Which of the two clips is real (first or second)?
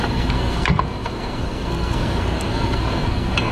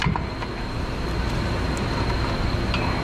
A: second